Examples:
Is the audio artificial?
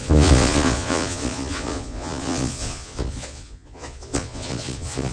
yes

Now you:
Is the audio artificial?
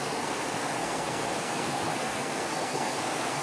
yes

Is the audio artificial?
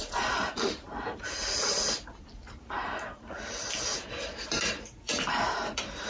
yes